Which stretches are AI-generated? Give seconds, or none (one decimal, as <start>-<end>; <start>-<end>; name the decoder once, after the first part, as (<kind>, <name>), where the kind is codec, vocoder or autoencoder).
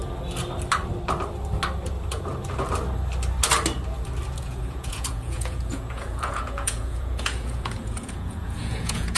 4.4-9.2 (vocoder, Vocos)